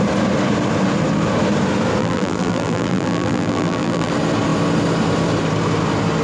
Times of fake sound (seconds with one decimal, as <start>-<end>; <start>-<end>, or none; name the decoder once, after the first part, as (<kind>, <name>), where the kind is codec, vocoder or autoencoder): 2.0-4.1 (vocoder, BigVGAN v2)

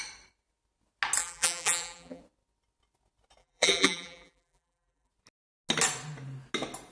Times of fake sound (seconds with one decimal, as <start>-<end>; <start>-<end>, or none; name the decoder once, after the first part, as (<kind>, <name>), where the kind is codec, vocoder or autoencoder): 1.2-2.2 (vocoder, BigVGAN v2); 3.4-5.1

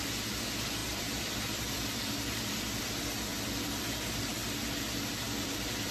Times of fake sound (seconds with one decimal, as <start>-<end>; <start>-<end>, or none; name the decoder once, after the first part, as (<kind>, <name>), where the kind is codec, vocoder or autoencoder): 0.8-2.6 (vocoder, BigVGAN v2); 3.3-3.8; 4.4-5.9

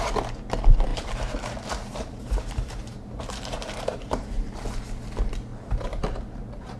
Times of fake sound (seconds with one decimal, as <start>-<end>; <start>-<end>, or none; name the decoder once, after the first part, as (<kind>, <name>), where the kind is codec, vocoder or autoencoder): 0.9-4.6 (vocoder, BigVGAN v2); 5.5-6.8

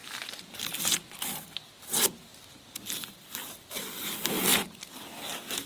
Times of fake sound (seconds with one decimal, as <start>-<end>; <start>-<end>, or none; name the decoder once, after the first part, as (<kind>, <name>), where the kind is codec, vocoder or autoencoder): none

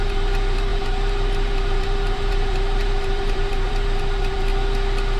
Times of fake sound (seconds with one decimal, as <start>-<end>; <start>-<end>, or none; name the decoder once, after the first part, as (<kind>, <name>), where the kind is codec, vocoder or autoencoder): 0.0-4.5 (vocoder, BigVGAN v2)

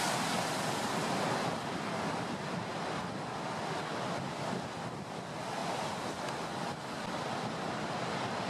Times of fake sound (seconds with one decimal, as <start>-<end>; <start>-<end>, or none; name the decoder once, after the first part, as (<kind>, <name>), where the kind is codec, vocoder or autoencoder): 5.6-6.2 (vocoder, BigVGAN v2)